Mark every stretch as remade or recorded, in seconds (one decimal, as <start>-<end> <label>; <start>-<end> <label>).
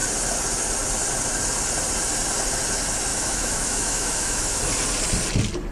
0.0-3.1 recorded; 3.1-4.6 remade; 4.6-5.7 recorded